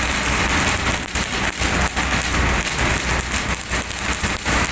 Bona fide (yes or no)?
yes